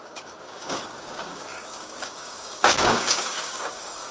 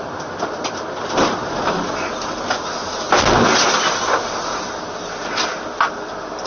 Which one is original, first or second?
second